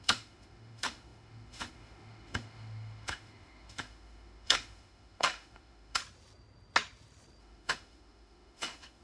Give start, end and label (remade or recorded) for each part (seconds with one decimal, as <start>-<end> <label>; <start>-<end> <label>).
0.0-6.0 remade; 6.0-7.4 recorded; 7.4-9.0 remade